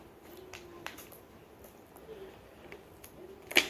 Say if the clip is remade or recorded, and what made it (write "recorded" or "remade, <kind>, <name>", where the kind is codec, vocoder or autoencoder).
recorded